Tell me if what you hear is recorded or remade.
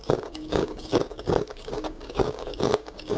remade